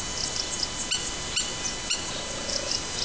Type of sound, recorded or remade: recorded